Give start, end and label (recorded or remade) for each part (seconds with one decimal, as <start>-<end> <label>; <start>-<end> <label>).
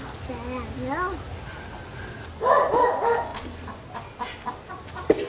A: 0.0-5.3 recorded